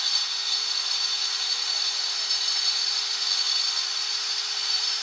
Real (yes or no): yes